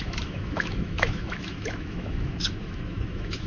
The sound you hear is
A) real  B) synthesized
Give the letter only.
B